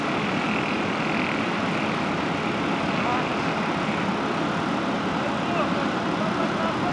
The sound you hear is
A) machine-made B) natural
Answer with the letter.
B